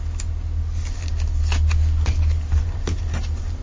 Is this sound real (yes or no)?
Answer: yes